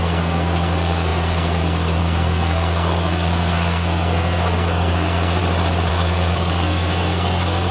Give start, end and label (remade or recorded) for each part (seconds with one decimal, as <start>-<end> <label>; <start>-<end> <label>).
0.0-5.4 remade; 5.4-5.9 recorded; 5.9-7.7 remade